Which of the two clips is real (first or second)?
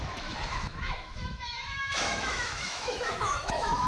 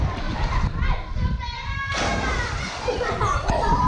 second